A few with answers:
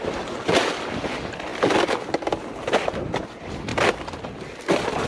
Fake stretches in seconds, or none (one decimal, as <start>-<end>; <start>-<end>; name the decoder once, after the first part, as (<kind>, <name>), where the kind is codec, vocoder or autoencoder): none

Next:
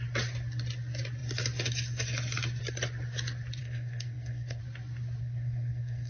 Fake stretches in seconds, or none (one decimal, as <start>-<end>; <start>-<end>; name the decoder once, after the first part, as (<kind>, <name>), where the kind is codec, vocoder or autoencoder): 3.6-4.6 (codec, SNAC); 5.2-6.1

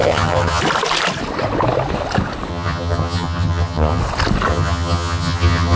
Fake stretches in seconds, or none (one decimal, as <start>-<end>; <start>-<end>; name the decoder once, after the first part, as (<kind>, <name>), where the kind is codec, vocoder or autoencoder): 0.0-0.6 (vocoder, HiFi-GAN); 2.5-4.0; 4.5-5.8

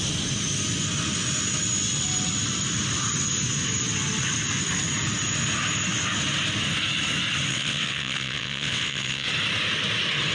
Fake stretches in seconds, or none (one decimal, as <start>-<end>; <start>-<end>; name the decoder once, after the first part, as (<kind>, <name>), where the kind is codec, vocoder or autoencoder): 7.5-9.3 (vocoder, WaveNeXt)

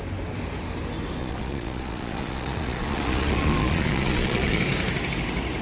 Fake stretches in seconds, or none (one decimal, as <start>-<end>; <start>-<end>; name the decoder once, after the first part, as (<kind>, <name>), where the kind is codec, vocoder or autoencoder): 1.2-4.6 (vocoder, Vocos)